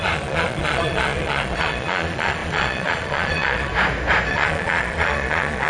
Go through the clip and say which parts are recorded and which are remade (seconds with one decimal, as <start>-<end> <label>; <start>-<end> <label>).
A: 0.0-3.7 remade; 3.7-4.3 recorded; 4.3-5.7 remade